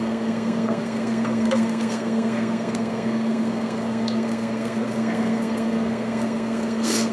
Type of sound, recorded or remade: remade